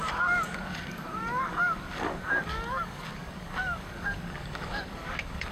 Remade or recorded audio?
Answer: remade